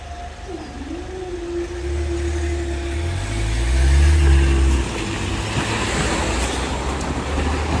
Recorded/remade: recorded